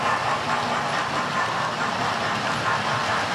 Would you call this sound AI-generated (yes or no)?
no